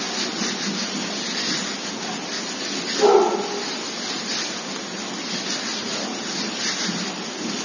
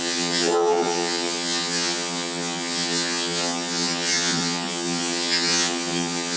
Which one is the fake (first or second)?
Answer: second